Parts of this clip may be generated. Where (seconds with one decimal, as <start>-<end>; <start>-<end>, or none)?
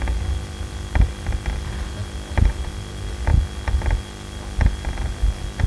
none